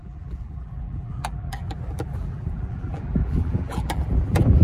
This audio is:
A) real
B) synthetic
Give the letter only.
B